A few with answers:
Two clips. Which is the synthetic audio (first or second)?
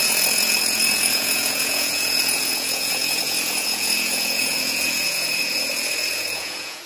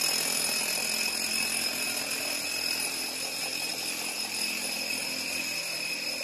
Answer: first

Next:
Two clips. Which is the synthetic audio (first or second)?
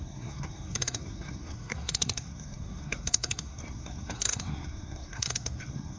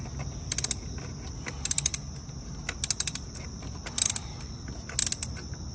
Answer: first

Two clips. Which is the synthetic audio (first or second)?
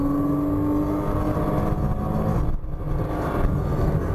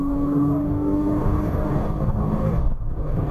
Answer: second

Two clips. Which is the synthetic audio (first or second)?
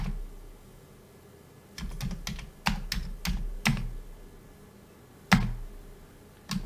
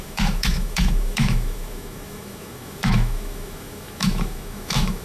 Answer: second